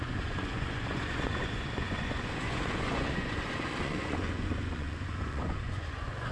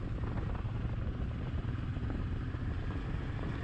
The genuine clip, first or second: second